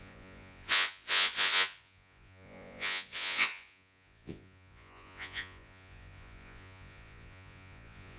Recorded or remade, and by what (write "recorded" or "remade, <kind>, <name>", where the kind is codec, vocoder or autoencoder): remade, vocoder, Vocos